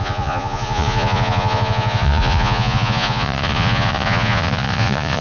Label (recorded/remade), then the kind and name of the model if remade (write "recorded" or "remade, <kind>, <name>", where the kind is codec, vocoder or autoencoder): remade, vocoder, Vocos